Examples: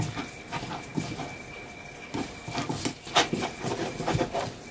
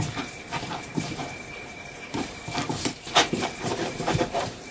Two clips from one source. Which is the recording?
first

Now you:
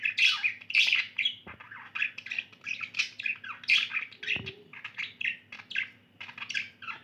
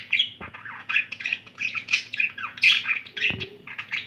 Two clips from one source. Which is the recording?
first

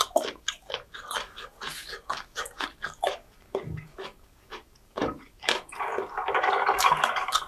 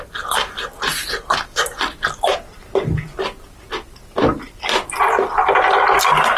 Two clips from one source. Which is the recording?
second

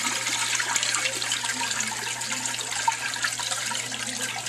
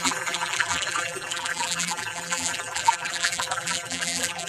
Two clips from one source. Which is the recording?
first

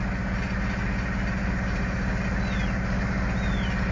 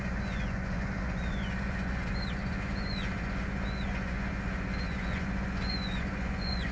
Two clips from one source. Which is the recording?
first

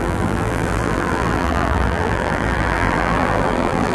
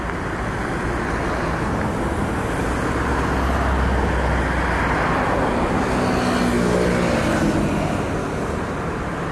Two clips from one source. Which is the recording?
second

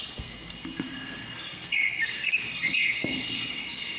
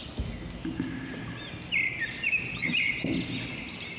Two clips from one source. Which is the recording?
second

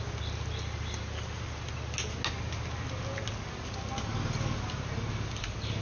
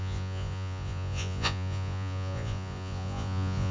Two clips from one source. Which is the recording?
first